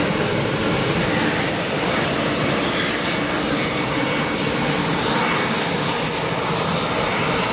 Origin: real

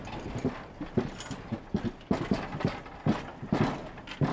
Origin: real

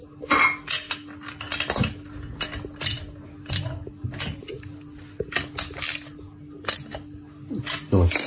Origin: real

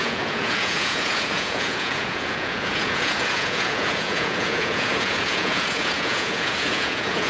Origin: fake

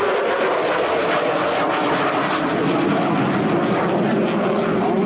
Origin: real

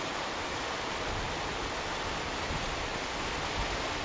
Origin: real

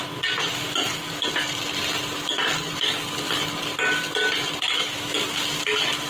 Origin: real